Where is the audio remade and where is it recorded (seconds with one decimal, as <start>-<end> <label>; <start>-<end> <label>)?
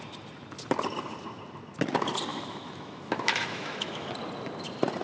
0.0-2.3 recorded; 2.3-4.1 remade; 4.1-5.0 recorded